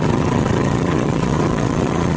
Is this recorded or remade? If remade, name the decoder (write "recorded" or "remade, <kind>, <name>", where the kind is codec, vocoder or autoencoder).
remade, vocoder, Vocos